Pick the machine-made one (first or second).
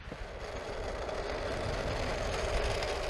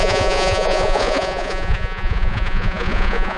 second